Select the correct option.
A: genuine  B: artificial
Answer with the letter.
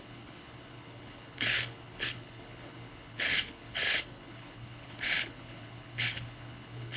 B